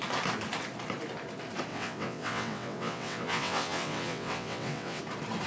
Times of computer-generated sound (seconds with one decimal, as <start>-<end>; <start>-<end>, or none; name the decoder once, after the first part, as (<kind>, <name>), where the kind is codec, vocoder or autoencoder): 1.7-5.0 (vocoder, WaveNeXt)